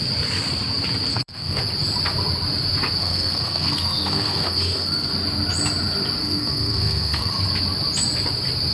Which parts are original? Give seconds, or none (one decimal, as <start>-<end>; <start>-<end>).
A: 0.0-1.1; 1.6-3.0; 5.1-6.2; 7.3-8.7